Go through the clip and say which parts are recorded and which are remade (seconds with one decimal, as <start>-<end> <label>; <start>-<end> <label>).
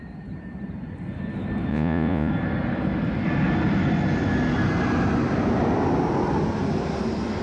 0.0-1.7 recorded; 1.7-2.3 remade; 2.3-7.4 recorded